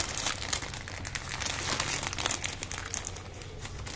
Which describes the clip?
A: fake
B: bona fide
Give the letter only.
B